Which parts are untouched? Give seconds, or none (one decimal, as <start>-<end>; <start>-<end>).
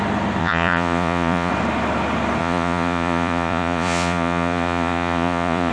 0.0-0.4; 1.5-2.4